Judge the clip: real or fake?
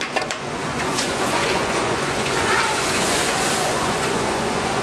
fake